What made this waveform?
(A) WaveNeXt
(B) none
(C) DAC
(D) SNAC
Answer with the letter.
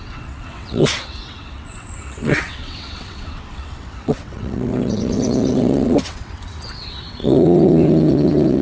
A